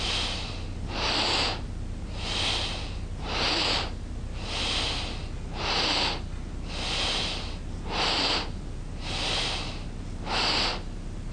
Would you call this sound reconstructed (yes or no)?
no